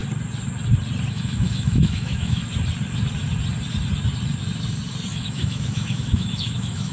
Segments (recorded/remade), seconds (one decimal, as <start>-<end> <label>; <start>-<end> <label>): 0.0-1.1 recorded; 1.1-2.4 remade; 2.4-5.1 recorded; 5.1-6.9 remade